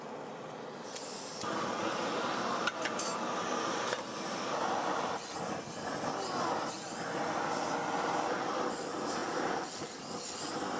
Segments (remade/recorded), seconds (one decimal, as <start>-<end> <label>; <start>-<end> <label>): 0.0-10.8 recorded